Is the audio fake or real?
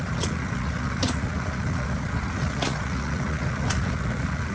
fake